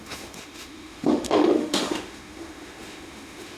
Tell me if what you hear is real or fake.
fake